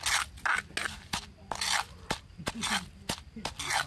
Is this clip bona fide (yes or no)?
yes